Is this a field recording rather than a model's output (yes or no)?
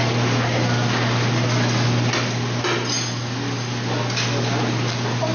yes